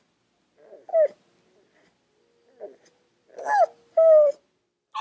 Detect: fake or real real